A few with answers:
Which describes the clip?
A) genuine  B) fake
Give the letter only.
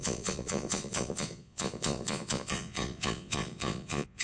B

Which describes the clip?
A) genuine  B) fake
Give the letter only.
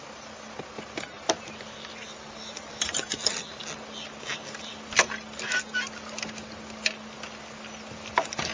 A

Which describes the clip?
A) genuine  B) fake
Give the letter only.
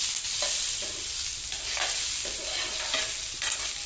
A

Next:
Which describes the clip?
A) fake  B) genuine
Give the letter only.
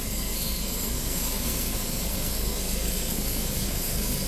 A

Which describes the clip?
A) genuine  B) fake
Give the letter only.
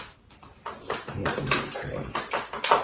A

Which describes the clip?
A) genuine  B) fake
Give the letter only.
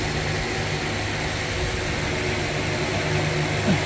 A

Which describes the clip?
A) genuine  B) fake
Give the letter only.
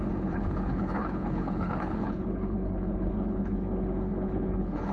B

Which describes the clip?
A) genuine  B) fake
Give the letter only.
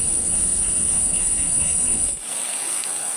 B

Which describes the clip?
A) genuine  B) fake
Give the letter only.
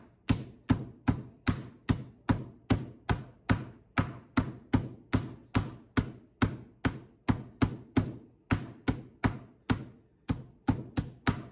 A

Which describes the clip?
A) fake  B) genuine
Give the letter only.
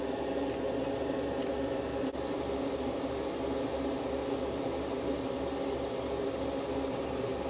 B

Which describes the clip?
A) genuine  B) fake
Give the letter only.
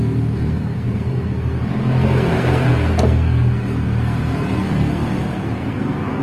B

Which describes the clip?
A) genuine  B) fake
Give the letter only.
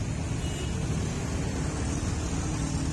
A